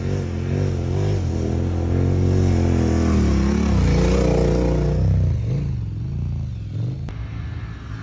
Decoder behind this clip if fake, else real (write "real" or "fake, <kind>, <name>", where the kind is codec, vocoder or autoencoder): real